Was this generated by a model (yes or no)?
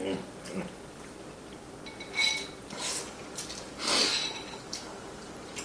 no